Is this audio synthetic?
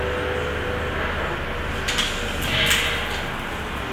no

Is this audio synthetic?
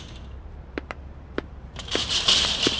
yes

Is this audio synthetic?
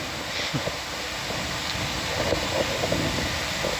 no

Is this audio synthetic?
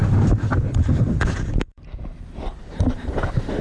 yes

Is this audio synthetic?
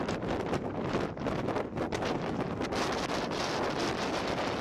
no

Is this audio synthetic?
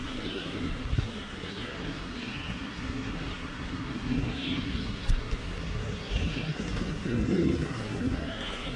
yes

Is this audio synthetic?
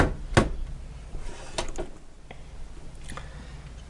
no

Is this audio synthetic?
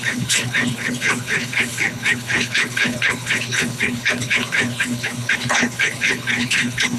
yes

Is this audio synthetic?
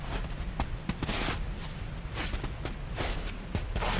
no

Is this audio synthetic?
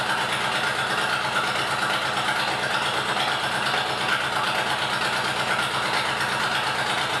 no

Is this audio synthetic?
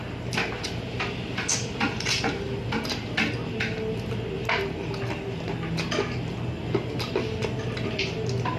no